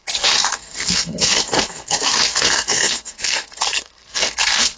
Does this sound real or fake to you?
fake